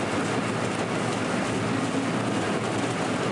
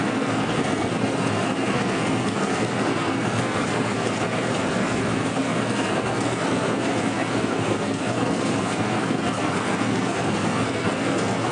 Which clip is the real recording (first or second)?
first